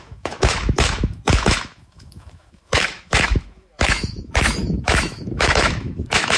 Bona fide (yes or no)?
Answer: no